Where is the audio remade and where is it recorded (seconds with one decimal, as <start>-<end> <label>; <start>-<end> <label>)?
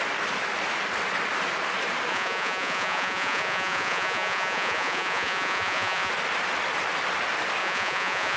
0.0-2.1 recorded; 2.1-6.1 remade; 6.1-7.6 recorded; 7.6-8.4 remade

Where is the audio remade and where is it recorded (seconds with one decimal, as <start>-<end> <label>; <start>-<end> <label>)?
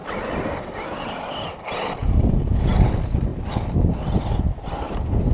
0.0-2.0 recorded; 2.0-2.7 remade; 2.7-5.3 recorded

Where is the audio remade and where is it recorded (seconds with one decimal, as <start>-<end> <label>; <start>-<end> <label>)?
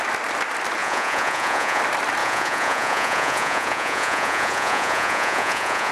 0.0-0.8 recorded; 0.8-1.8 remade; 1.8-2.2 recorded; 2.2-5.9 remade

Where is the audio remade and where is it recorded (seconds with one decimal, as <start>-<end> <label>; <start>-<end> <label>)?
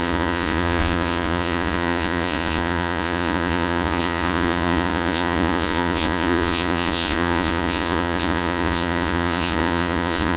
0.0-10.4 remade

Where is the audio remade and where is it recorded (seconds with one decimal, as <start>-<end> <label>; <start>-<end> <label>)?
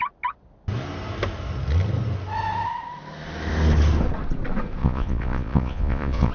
0.0-4.8 recorded; 4.8-6.3 remade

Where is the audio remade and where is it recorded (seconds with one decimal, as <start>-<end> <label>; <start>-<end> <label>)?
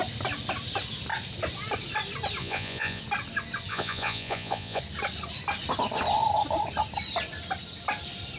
0.0-2.4 recorded; 2.4-3.0 remade; 3.0-3.7 recorded; 3.7-4.8 remade; 4.8-8.4 recorded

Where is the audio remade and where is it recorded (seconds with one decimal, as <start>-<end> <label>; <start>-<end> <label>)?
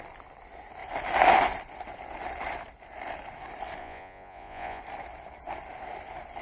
0.0-3.8 recorded; 3.8-4.8 remade; 4.8-6.4 recorded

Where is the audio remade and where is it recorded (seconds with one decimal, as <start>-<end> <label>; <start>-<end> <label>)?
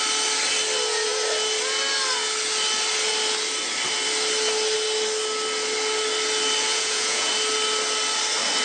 0.0-6.7 recorded; 6.7-7.3 remade; 7.3-8.6 recorded